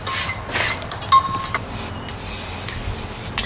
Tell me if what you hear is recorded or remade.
recorded